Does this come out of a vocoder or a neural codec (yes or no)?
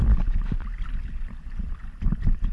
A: yes